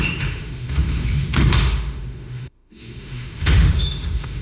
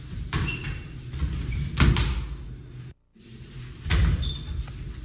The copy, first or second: first